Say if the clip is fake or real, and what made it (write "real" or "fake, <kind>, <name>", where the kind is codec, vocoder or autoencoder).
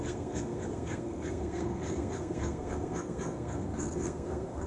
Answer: fake, codec, SNAC